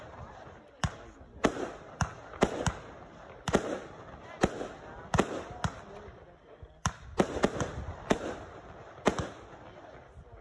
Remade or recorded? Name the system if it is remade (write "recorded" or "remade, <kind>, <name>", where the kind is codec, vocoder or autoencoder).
recorded